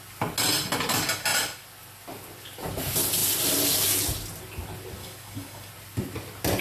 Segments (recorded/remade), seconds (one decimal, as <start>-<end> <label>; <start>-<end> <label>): 0.0-5.0 recorded; 5.0-5.7 remade; 5.7-6.6 recorded